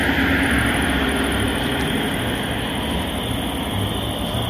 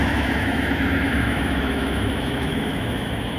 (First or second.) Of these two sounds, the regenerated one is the second